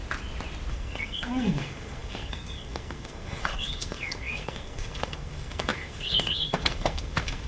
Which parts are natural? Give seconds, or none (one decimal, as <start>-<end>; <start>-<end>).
0.0-0.7